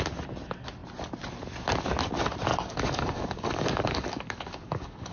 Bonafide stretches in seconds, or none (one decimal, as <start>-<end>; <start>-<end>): 0.0-2.5